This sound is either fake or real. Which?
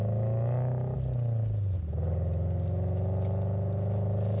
real